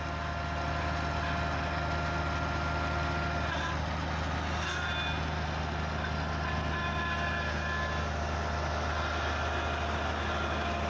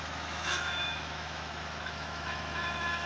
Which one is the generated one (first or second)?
second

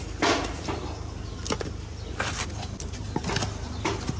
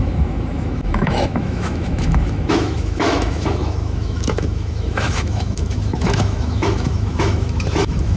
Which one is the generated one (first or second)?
second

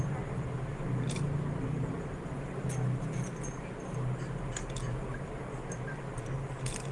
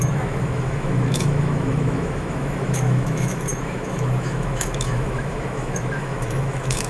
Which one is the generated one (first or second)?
second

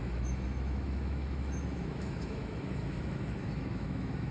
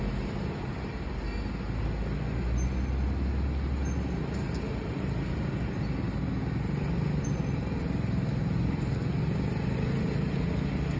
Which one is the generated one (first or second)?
first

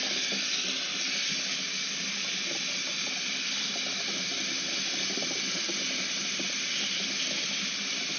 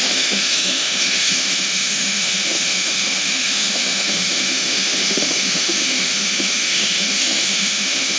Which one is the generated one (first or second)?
second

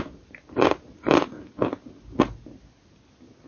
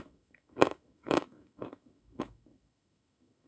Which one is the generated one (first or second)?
second